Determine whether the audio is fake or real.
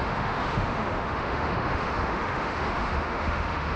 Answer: fake